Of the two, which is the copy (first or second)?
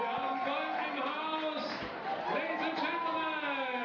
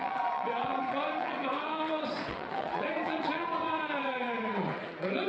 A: second